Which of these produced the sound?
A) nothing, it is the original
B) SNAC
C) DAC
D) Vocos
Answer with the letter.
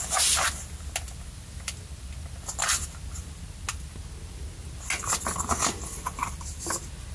A